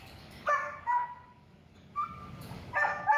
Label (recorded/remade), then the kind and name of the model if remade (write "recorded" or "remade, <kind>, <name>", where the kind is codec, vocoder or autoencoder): remade, codec, DAC